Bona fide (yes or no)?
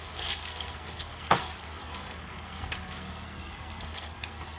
no